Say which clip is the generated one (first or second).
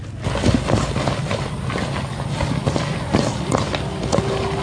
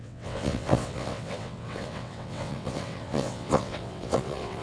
second